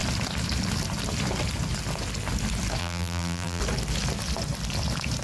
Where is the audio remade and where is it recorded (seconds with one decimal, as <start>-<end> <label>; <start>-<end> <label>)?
0.0-2.8 recorded; 2.8-3.6 remade; 3.6-5.2 recorded